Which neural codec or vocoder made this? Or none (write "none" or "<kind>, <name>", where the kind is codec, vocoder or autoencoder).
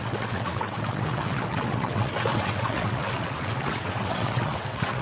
vocoder, WaveNeXt